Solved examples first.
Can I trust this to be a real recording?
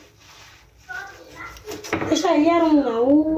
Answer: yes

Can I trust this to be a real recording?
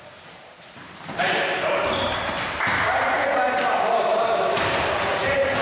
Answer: no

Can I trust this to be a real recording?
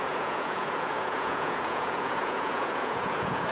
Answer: no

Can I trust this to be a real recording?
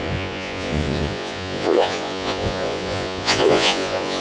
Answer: no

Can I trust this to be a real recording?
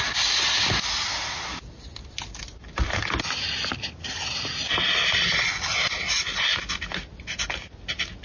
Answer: yes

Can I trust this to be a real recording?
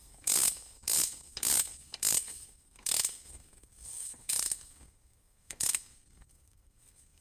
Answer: no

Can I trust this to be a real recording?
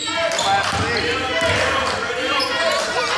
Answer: yes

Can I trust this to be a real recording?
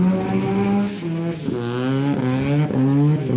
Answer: yes